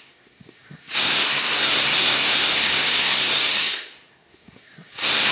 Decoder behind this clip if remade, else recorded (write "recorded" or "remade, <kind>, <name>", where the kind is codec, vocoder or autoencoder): remade, codec, SNAC